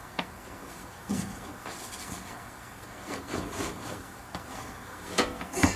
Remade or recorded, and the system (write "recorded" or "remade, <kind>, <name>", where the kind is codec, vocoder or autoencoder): remade, codec, SNAC